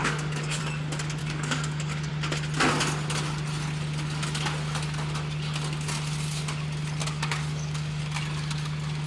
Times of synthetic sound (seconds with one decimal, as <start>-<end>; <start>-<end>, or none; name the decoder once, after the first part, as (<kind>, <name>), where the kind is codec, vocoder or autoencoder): 0.0-0.6 (codec, DAC); 1.2-2.1; 7.0-8.0